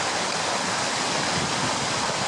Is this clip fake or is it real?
real